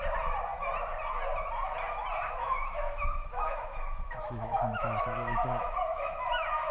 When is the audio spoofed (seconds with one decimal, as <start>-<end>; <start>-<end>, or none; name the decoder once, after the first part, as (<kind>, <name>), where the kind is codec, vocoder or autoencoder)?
2.4-6.7 (autoencoder, DAC-VAE)

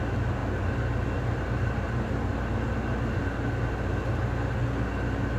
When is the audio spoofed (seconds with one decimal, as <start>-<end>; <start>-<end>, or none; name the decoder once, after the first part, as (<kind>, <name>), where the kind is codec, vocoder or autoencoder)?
none

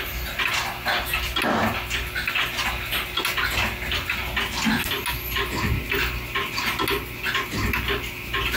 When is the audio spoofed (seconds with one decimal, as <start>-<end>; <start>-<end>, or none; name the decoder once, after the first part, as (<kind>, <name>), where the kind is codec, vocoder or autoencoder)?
none

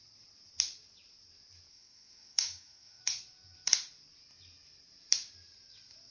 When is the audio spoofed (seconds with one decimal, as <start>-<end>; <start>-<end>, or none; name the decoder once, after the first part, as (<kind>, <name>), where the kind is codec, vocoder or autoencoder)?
1.7-3.0 (autoencoder, DAC-VAE)

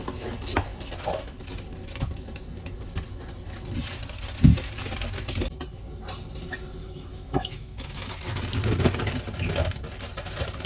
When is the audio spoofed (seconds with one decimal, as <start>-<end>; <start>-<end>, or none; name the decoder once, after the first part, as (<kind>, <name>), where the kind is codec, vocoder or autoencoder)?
6.8-8.1 (autoencoder, DAC-VAE)

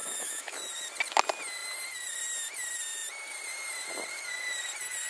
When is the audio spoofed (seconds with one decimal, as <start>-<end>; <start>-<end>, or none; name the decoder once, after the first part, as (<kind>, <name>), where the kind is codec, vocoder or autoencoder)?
0.0-0.6 (autoencoder, DAC-VAE)

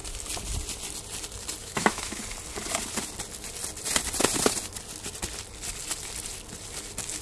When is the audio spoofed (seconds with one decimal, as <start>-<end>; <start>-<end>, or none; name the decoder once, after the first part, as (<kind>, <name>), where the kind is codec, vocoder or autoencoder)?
1.6-2.2 (autoencoder, DAC-VAE)